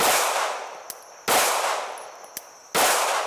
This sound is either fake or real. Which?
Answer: real